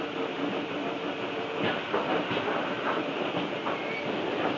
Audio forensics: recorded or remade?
recorded